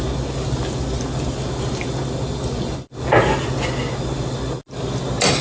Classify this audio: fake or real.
real